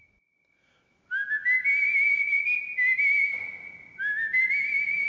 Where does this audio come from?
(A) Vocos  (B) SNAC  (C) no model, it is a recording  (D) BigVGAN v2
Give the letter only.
C